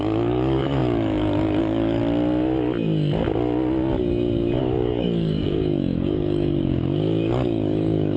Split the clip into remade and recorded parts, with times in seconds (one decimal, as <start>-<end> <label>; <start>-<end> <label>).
0.0-2.0 remade; 2.0-4.6 recorded; 4.6-8.2 remade